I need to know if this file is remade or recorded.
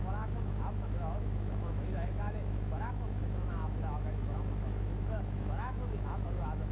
remade